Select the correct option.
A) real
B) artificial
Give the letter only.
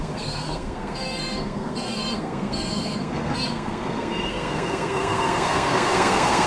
B